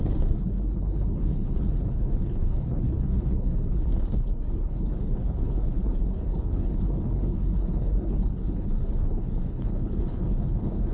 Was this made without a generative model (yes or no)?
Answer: no